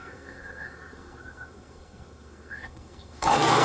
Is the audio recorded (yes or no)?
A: no